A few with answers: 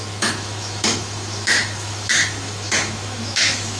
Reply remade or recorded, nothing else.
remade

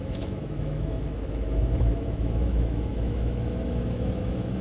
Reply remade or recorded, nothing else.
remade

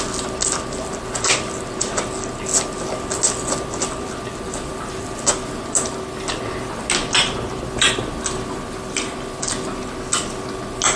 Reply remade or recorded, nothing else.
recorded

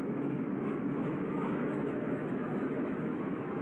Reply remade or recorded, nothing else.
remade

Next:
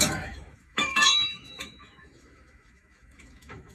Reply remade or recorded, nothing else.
remade